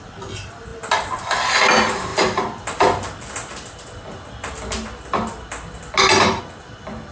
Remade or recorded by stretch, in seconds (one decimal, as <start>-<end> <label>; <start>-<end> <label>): 0.0-7.1 recorded